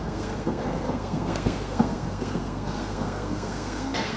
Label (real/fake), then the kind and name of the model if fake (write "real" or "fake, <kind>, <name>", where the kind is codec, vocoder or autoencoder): fake, codec, SNAC